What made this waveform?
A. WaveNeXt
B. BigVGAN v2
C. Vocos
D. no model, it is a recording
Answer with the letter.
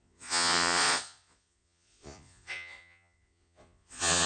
C